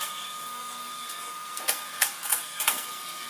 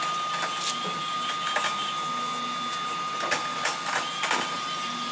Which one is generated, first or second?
first